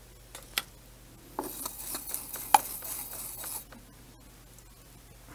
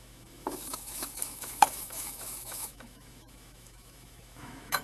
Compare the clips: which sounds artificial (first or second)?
second